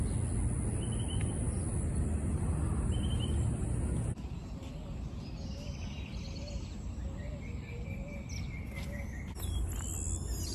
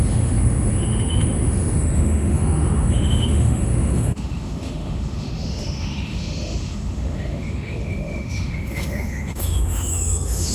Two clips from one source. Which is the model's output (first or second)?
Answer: second